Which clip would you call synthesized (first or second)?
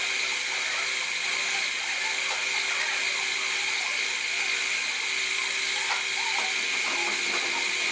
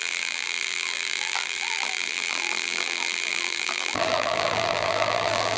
second